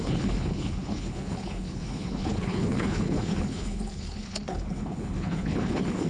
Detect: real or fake fake